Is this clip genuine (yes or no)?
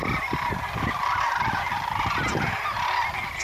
yes